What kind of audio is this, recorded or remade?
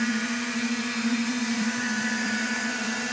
remade